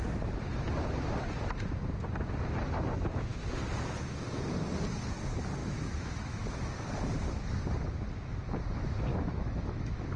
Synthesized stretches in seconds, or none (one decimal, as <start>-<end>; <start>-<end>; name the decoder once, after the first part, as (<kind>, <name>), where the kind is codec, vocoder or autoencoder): 5.6-6.5 (autoencoder, DAC-VAE); 9.1-10.2